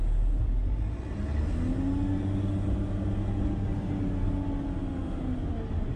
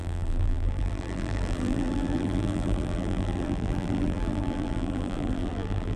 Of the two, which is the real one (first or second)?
first